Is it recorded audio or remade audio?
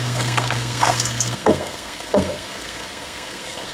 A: remade